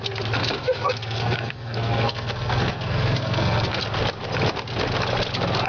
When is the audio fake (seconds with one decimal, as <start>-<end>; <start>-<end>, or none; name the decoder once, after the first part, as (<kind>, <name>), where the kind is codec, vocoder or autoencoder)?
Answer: 0.4-3.8 (codec, SNAC)